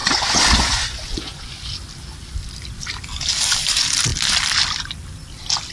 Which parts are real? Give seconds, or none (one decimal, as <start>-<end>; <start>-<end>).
1.6-5.7